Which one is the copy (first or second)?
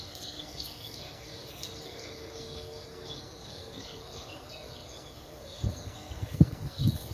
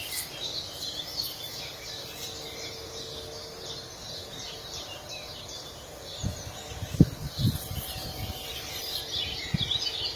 first